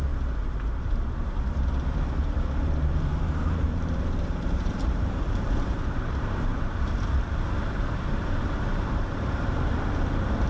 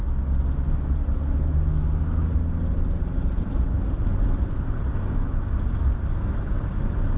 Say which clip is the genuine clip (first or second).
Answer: second